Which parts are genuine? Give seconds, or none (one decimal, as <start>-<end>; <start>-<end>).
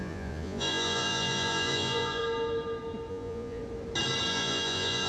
2.2-3.1; 3.6-4.3